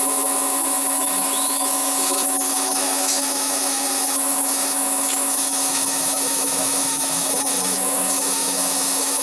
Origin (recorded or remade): remade